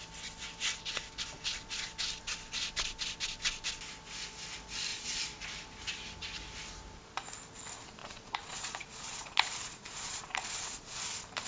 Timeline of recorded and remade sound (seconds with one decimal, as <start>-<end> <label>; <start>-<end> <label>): 0.0-4.9 recorded; 4.9-5.4 remade; 5.4-8.0 recorded; 8.0-11.0 remade; 11.0-11.5 recorded